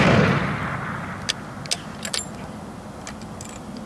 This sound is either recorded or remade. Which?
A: recorded